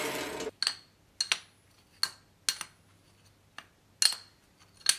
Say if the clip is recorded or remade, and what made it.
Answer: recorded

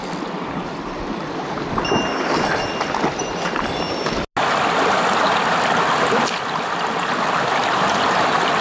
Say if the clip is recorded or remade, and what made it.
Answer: recorded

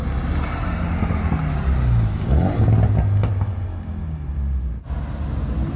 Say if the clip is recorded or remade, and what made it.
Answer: recorded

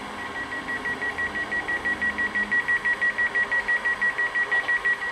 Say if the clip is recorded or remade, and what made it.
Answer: recorded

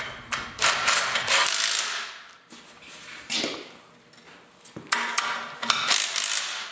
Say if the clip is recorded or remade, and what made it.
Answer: recorded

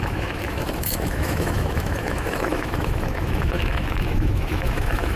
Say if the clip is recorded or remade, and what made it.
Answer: remade, autoencoder, DAC-VAE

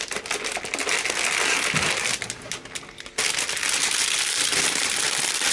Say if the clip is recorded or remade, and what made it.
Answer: recorded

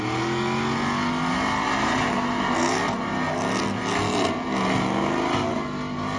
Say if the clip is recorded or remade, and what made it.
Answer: recorded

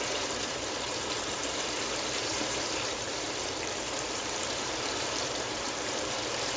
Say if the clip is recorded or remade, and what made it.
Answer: remade, vocoder, BigVGAN v2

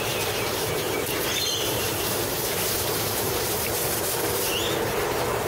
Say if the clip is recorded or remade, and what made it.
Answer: remade, vocoder, BigVGAN v2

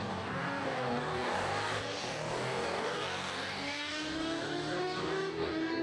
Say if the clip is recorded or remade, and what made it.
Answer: remade, codec, DAC